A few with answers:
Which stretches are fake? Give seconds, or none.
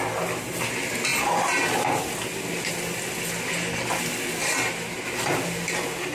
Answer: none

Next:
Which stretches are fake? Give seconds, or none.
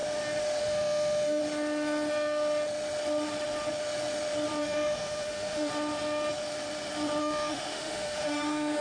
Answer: 0.6-1.4 (autoencoder, DAC-VAE); 4.6-5.7; 7.2-8.8